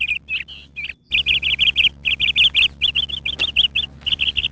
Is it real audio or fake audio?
real